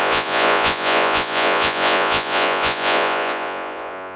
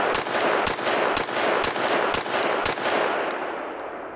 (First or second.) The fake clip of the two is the first